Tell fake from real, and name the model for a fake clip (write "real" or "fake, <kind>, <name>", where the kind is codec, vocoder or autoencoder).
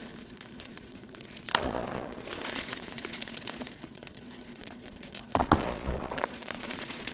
fake, vocoder, Vocos